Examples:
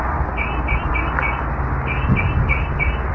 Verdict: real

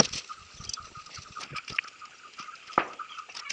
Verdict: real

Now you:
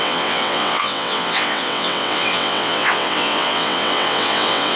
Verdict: fake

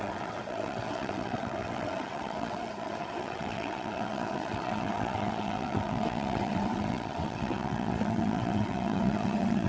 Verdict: fake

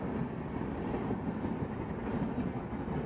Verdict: real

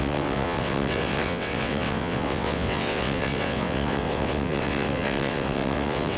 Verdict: fake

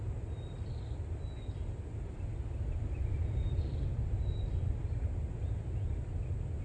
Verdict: real